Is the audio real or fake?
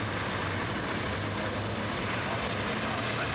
real